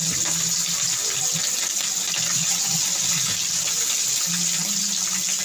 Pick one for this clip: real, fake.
real